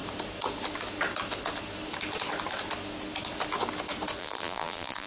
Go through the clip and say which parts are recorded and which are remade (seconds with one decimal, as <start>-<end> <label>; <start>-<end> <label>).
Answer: 0.0-4.2 recorded; 4.2-5.1 remade